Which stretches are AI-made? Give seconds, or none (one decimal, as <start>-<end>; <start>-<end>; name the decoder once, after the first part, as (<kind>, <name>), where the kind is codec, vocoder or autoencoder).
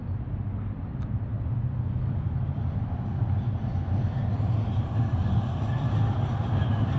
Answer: none